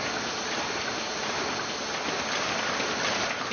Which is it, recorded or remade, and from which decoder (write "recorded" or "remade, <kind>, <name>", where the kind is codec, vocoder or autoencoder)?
recorded